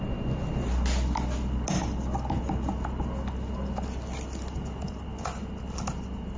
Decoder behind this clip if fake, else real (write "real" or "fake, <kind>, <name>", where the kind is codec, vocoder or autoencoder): real